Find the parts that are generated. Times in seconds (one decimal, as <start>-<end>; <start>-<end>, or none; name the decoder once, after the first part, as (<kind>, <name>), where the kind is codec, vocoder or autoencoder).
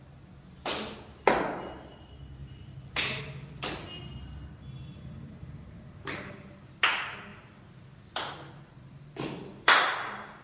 none